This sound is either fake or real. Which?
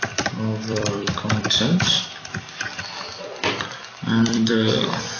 fake